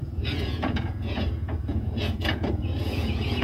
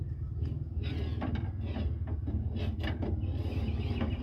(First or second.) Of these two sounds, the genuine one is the second